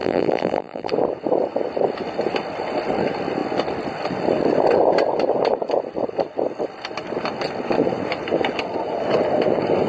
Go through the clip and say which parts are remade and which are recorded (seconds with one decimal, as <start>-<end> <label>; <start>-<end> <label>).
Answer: 0.0-0.9 remade; 0.9-9.9 recorded